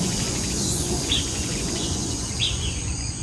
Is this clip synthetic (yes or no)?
yes